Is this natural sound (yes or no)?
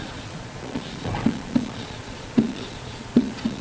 no